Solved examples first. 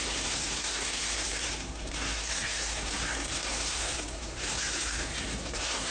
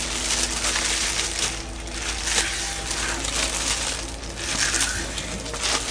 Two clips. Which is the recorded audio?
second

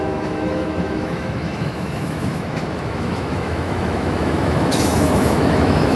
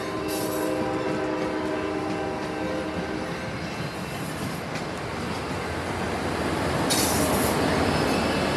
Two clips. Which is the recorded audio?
second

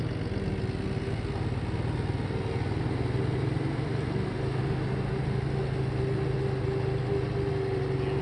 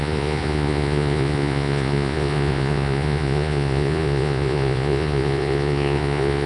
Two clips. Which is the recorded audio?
first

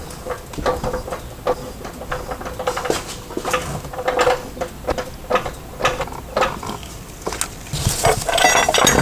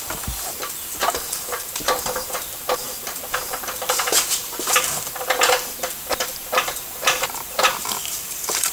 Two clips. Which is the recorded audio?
first